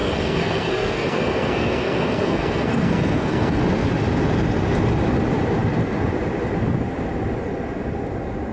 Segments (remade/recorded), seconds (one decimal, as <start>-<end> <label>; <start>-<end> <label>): 0.0-3.6 remade; 3.6-8.5 recorded